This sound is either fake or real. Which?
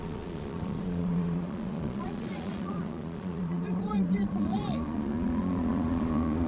fake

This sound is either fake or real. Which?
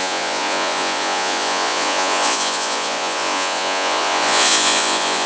fake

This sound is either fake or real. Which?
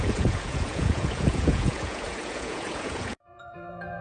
fake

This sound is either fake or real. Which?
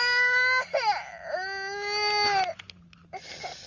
real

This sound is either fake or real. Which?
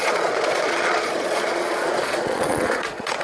fake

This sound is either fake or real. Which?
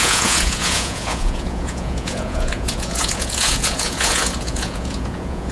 fake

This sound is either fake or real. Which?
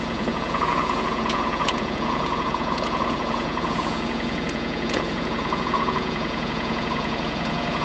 fake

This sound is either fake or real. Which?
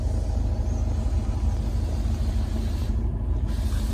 real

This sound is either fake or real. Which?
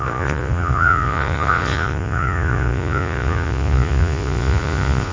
fake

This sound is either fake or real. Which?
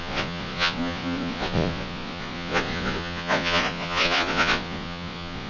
fake